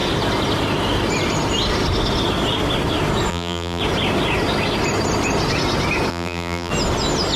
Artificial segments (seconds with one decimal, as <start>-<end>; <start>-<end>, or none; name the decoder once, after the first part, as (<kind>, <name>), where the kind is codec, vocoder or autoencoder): 3.3-3.8 (vocoder, BigVGAN v2); 6.1-6.7